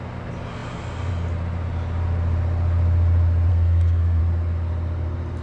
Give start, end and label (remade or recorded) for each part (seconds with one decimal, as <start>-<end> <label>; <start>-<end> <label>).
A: 0.0-3.5 recorded; 3.5-4.2 remade; 4.2-5.4 recorded